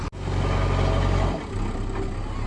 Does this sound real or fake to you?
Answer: real